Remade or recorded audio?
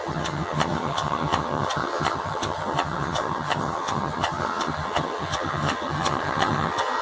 remade